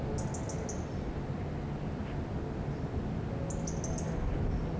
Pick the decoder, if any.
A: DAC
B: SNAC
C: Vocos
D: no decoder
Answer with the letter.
D